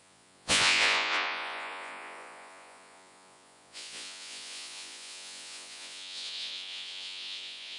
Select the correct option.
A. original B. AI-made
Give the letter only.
B